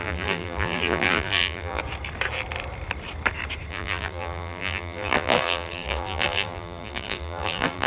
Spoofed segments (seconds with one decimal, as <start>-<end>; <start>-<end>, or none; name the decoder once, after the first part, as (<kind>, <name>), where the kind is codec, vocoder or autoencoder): 0.0-1.8 (vocoder, BigVGAN v2); 3.7-7.9